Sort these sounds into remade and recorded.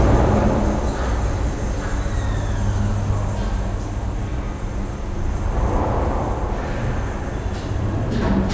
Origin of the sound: recorded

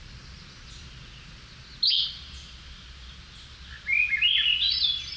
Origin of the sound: recorded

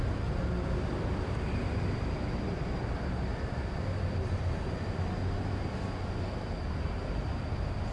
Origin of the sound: recorded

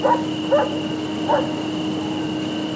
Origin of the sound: recorded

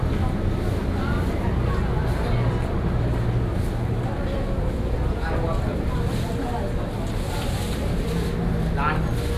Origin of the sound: recorded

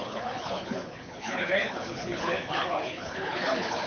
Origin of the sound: remade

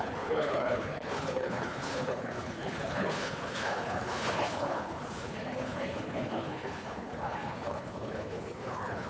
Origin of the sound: remade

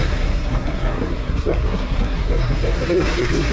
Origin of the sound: remade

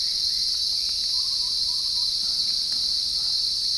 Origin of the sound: recorded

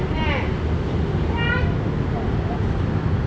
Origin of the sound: recorded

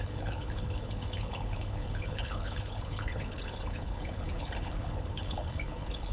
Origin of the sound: remade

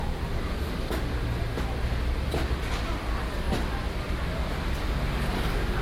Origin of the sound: recorded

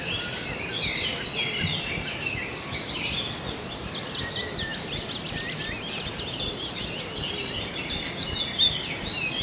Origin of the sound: recorded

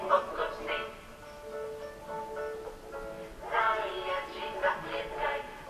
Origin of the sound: recorded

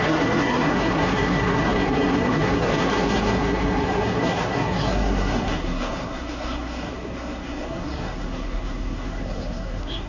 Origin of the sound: remade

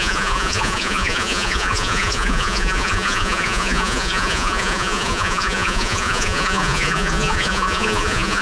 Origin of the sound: remade